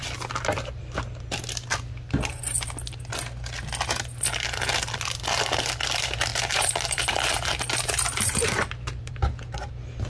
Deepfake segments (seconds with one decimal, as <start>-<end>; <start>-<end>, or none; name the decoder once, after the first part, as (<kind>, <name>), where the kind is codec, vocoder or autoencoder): 6.3-9.1 (vocoder, BigVGAN v2)